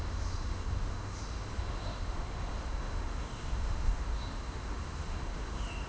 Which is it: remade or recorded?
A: remade